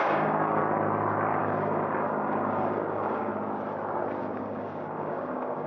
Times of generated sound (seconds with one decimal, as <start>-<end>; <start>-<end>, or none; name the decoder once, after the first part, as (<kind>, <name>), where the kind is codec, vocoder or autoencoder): 0.0-0.6 (codec, DAC); 1.4-3.3; 4.2-5.7